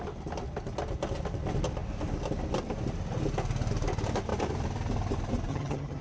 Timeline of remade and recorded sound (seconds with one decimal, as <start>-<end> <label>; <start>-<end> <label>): 0.0-5.5 recorded; 5.5-6.0 remade